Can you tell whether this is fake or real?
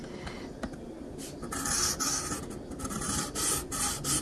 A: real